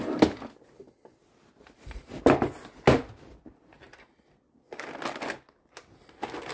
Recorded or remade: recorded